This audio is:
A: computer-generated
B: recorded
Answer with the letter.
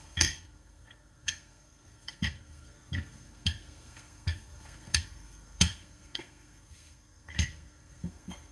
A